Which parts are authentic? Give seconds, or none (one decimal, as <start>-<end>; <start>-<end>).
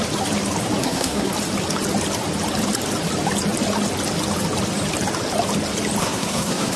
0.0-0.8; 1.3-6.0